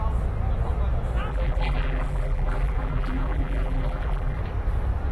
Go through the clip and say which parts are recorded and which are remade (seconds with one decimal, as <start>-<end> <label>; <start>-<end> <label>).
0.0-1.3 recorded; 1.3-4.4 remade; 4.4-5.1 recorded